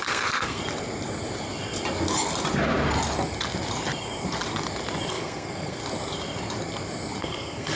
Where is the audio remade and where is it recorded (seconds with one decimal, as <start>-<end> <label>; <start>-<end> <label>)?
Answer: 0.0-0.6 remade; 0.6-5.1 recorded; 5.1-5.8 remade; 5.8-7.2 recorded; 7.2-7.8 remade